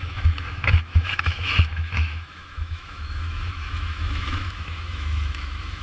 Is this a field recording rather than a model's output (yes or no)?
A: no